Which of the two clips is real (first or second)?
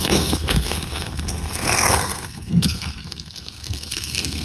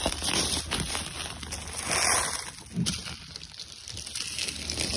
second